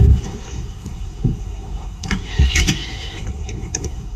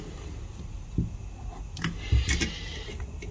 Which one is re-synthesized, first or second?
first